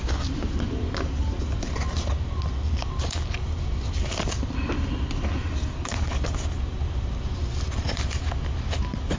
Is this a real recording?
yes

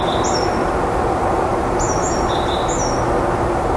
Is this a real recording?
yes